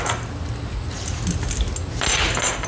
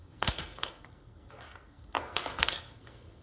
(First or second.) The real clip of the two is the first